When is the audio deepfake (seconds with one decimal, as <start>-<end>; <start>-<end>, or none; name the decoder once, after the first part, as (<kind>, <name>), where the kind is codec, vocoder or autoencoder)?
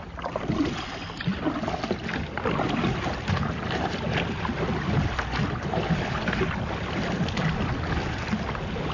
none